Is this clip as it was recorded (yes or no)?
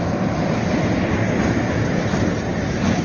yes